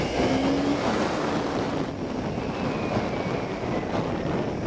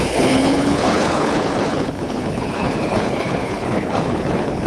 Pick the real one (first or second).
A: first